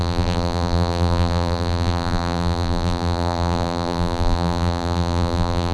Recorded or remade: remade